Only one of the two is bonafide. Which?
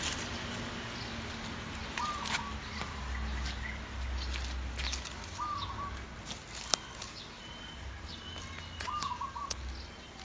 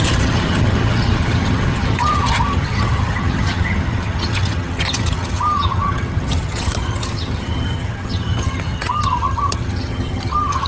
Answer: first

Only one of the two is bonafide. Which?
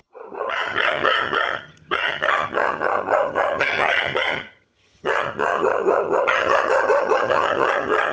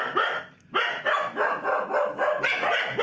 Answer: second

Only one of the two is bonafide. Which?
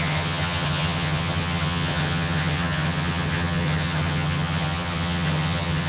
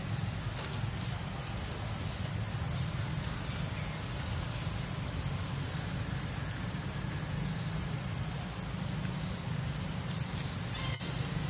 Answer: second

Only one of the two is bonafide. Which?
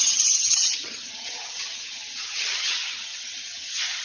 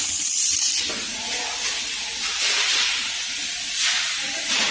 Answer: second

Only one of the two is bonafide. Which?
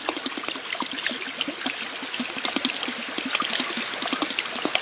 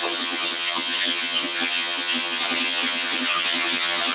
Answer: first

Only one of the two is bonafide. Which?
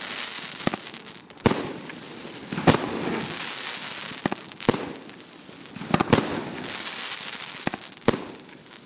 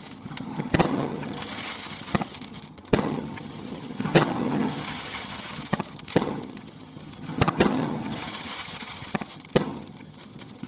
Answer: first